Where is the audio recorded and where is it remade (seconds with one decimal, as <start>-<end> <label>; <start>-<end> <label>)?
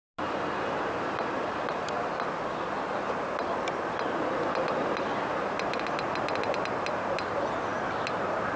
0.0-8.6 recorded